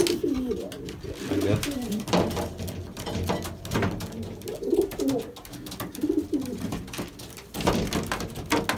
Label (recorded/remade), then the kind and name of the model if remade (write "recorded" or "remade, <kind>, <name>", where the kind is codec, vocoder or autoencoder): recorded